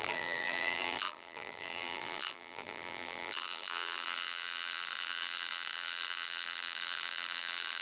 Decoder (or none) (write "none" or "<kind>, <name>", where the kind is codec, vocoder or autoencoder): vocoder, BigVGAN v2